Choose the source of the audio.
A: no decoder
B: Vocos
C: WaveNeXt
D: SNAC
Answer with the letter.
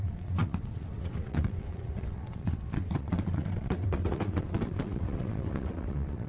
C